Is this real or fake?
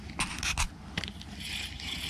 real